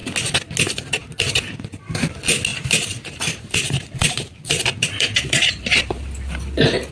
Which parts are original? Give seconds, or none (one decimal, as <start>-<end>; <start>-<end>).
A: 0.0-2.5; 5.8-6.9